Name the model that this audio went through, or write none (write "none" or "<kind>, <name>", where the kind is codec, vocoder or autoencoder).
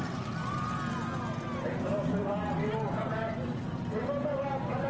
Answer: none